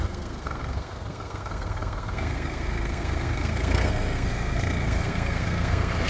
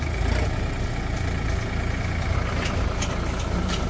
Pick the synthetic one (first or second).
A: first